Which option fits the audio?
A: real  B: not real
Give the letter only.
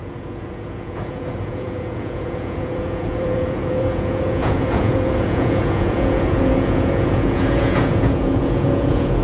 B